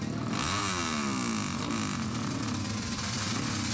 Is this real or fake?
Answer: real